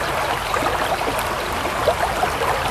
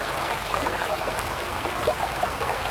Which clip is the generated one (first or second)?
second